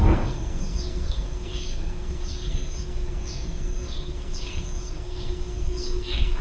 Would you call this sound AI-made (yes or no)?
yes